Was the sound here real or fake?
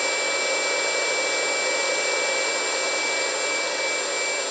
real